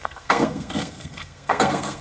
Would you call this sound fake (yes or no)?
yes